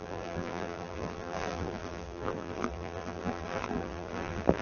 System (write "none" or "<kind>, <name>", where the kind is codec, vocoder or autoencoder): vocoder, BigVGAN v2